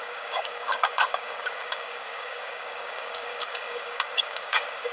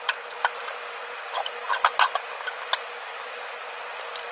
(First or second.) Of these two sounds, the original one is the second